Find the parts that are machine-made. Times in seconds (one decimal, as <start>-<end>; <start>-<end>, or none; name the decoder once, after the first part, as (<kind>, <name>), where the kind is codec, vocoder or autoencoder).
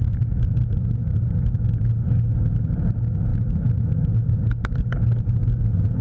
none